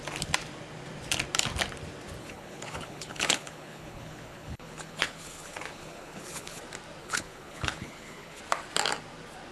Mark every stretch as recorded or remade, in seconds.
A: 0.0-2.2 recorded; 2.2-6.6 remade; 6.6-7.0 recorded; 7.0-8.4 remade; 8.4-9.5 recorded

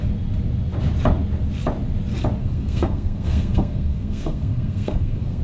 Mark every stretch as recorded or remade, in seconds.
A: 0.0-2.4 recorded; 2.4-5.4 remade

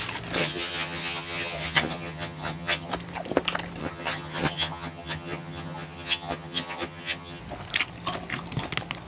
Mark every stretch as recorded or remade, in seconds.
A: 0.0-0.4 recorded; 0.4-2.9 remade; 2.9-3.8 recorded; 3.8-7.4 remade; 7.4-9.1 recorded

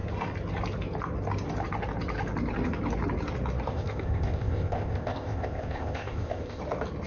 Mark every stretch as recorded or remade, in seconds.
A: 0.0-3.7 recorded; 3.7-6.6 remade; 6.6-7.1 recorded